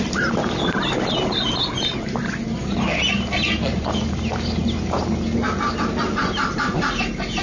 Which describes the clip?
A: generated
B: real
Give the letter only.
B